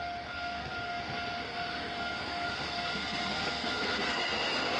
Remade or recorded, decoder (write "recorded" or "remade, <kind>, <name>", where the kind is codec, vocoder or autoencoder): remade, codec, SNAC